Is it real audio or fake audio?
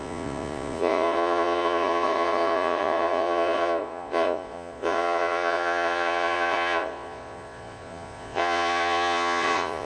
fake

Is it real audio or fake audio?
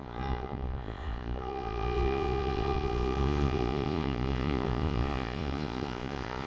fake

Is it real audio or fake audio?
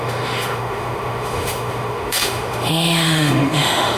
fake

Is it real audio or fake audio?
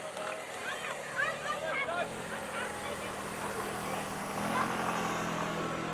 real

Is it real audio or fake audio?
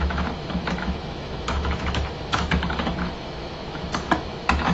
fake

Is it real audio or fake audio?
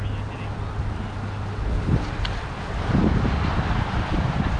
real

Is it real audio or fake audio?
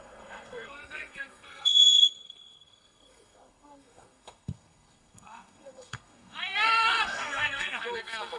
fake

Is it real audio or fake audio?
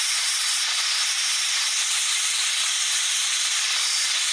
fake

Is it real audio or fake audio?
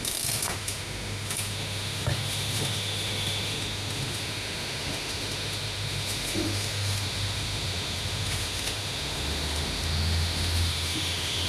fake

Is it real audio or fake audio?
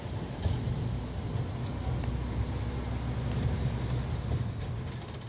real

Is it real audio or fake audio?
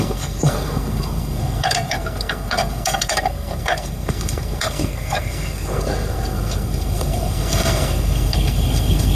fake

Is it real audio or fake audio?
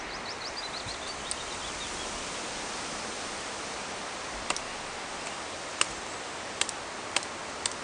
real